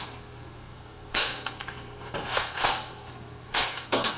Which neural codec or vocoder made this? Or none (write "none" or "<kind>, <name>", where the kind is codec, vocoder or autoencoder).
codec, SNAC